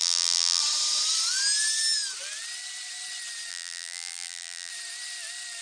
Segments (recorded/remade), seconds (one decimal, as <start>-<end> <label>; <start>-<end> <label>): 0.0-0.6 remade; 0.6-3.5 recorded; 3.5-4.7 remade; 4.7-5.6 recorded